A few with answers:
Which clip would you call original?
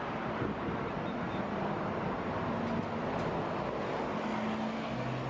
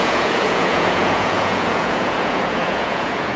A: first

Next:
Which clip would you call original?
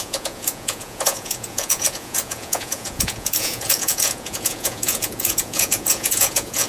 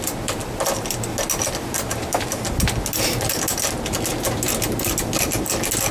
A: second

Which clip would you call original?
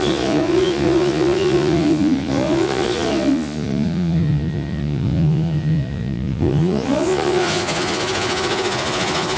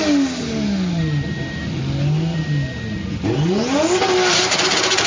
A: second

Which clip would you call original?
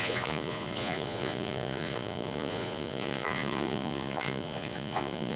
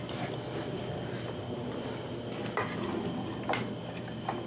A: second